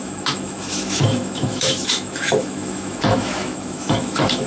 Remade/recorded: remade